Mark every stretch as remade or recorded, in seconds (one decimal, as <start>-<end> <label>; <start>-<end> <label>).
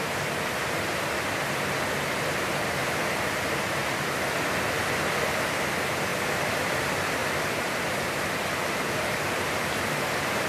0.0-6.1 recorded; 6.1-6.8 remade; 6.8-7.2 recorded; 7.2-9.5 remade; 9.5-10.5 recorded